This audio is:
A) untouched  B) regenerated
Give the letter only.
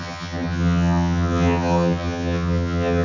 B